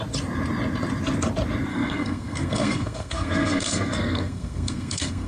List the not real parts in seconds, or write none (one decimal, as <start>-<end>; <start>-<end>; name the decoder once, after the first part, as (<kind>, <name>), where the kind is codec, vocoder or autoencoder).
1.7-5.3 (codec, SNAC)